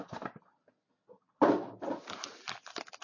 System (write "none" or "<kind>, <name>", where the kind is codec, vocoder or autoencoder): none